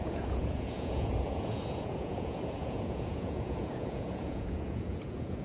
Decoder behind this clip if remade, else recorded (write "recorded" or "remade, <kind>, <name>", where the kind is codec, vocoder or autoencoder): remade, vocoder, Vocos